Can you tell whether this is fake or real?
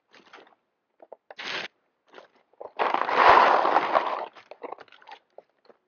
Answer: real